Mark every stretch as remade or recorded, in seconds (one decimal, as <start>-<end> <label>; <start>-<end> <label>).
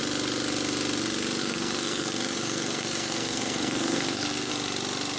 0.0-1.4 recorded; 1.4-4.5 remade; 4.5-5.2 recorded